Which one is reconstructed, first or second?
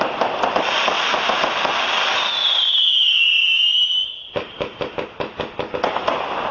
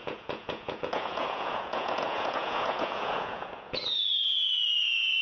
second